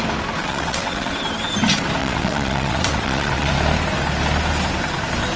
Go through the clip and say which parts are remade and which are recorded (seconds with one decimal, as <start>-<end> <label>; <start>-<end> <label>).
0.0-0.4 recorded; 0.4-1.1 remade; 1.1-2.0 recorded; 2.0-3.5 remade; 3.5-5.4 recorded